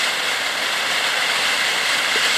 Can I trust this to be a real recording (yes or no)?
no